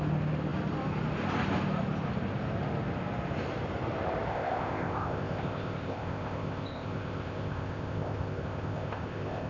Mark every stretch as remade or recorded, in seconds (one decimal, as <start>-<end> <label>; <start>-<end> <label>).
0.0-4.3 recorded; 4.3-9.5 remade